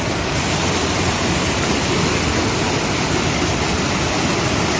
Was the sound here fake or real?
real